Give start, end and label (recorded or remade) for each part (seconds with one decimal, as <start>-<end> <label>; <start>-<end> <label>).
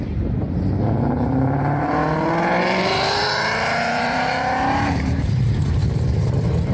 0.0-2.0 remade; 2.0-2.6 recorded; 2.6-6.7 remade